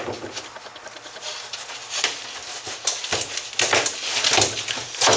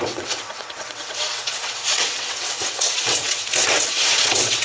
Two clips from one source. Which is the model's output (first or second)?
second